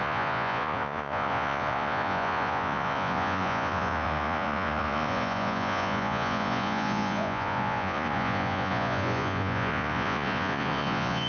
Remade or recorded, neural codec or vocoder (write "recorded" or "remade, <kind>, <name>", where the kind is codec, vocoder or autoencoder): remade, vocoder, Vocos